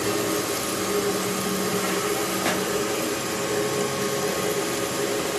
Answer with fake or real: real